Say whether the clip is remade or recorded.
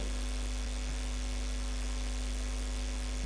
recorded